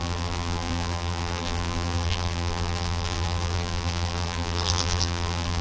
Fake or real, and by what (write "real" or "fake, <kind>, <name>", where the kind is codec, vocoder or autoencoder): fake, vocoder, BigVGAN v2